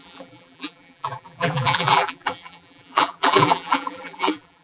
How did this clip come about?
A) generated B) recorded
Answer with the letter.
A